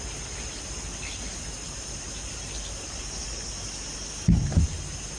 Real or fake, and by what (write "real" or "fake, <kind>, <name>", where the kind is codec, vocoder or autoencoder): real